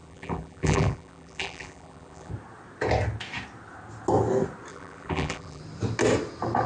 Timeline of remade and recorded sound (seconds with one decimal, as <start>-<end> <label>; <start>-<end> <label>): 0.0-2.3 remade; 2.3-4.7 recorded; 4.7-5.6 remade; 5.6-6.7 recorded